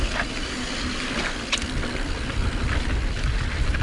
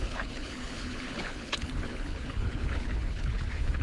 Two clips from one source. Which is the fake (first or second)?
second